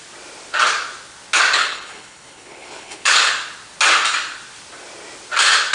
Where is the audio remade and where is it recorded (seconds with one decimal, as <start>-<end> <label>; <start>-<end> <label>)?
0.0-1.6 recorded; 1.6-3.3 remade; 3.3-5.7 recorded